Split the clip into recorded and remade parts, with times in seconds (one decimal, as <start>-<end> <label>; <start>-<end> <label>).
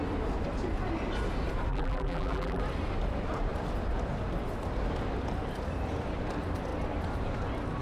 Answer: 0.0-1.7 recorded; 1.7-2.6 remade; 2.6-7.8 recorded